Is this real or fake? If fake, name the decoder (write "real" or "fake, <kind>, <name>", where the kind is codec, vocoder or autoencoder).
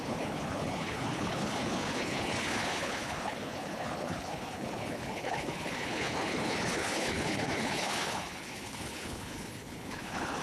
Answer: fake, codec, HILCodec